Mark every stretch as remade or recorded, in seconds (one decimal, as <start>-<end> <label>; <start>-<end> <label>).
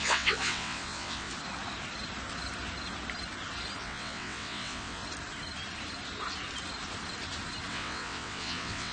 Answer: 0.0-1.3 remade; 1.3-3.8 recorded; 3.8-5.0 remade; 5.0-7.7 recorded; 7.7-8.9 remade